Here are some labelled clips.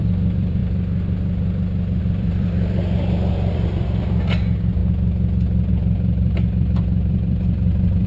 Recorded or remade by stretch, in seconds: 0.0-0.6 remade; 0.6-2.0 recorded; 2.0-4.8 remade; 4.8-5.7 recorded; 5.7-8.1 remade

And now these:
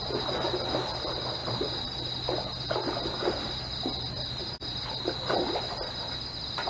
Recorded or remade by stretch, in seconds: 0.0-4.4 recorded; 4.4-4.9 remade; 4.9-6.7 recorded

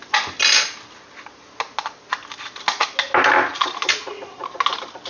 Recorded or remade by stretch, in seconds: 0.0-5.1 recorded

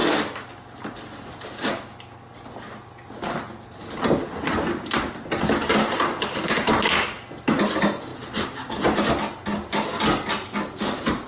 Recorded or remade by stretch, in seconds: 0.0-5.6 recorded; 5.6-6.7 remade; 6.7-8.1 recorded; 8.1-9.1 remade; 9.1-11.3 recorded

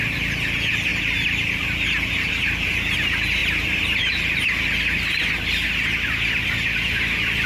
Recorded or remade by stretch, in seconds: 0.0-7.5 recorded

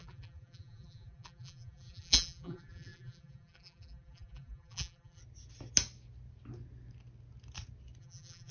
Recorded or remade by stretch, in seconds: 0.0-5.2 remade; 5.2-8.0 recorded; 8.0-8.5 remade

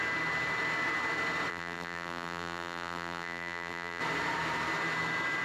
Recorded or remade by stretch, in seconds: 0.0-1.5 recorded; 1.5-4.0 remade; 4.0-5.4 recorded